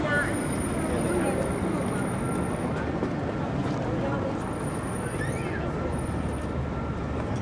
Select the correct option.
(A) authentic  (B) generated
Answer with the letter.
A